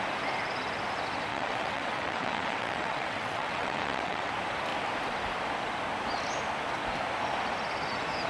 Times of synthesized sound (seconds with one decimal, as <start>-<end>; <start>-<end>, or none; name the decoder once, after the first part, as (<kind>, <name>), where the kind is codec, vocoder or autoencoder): 1.3-4.3 (vocoder, WaveNeXt)